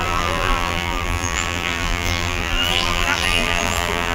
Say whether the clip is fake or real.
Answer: fake